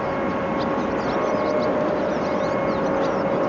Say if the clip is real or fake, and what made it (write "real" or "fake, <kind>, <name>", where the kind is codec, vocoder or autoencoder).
real